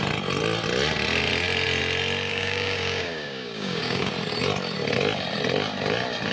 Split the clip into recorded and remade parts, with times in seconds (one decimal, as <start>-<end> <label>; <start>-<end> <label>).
0.0-2.3 recorded; 2.3-4.1 remade; 4.1-6.3 recorded